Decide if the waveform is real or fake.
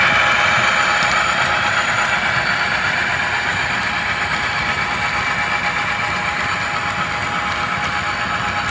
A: real